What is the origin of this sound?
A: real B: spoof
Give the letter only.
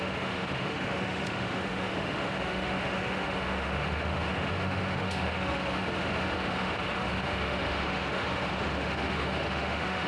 B